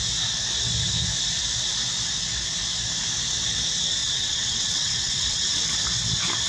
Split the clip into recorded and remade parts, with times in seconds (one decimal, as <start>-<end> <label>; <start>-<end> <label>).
0.0-4.0 recorded; 4.0-5.6 remade; 5.6-6.5 recorded